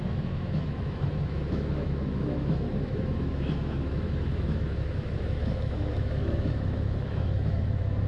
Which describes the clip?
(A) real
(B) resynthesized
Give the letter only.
B